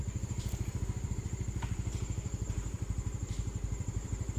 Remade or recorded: remade